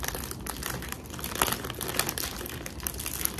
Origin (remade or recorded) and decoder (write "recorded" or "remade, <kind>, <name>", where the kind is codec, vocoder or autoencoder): recorded